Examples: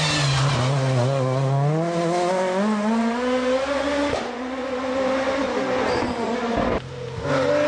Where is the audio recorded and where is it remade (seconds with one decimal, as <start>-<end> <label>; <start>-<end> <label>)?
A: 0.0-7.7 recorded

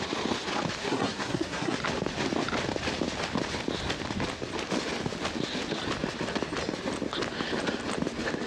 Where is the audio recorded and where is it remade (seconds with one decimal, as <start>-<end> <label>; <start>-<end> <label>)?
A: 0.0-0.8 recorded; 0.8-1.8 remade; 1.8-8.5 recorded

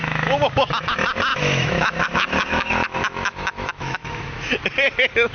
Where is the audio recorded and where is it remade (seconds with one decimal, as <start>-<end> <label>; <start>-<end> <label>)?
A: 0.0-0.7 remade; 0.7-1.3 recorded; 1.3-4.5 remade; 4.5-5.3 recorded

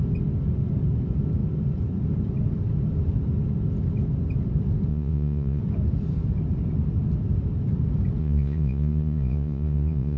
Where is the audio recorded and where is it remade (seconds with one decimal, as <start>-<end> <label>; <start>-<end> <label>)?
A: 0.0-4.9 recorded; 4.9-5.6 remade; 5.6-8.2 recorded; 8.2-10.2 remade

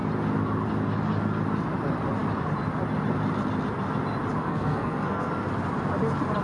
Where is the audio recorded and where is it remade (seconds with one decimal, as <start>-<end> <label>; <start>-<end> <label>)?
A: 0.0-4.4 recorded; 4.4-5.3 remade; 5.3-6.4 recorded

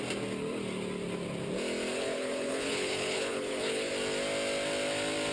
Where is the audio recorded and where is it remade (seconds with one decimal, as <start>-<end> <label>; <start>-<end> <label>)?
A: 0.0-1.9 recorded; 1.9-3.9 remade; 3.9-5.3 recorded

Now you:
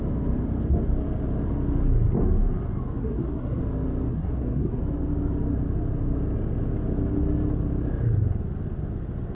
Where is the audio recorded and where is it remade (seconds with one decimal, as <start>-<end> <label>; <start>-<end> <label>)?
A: 0.0-3.0 recorded; 3.0-3.6 remade; 3.6-4.1 recorded; 4.1-4.8 remade; 4.8-9.3 recorded

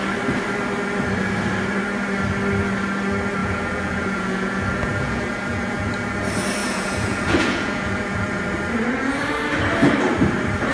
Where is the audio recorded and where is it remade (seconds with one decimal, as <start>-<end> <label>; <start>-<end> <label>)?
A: 0.0-3.4 recorded; 3.4-5.9 remade; 5.9-6.6 recorded; 6.6-8.4 remade; 8.4-10.7 recorded